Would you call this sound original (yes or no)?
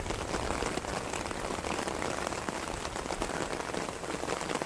yes